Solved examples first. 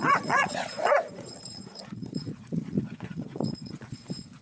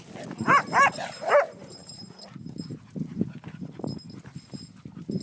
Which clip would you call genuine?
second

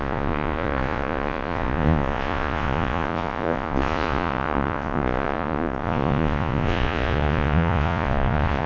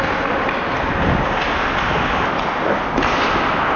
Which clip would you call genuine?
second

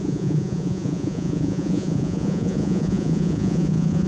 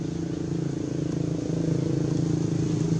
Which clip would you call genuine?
second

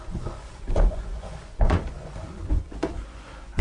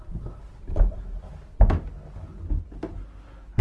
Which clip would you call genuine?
second